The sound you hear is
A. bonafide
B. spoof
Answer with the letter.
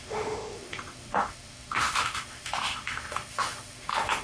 B